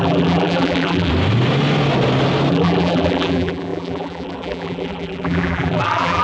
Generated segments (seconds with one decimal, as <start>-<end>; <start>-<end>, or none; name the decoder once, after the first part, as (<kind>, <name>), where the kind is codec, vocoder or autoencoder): 0.0-1.1 (vocoder, BigVGAN v2); 2.5-6.2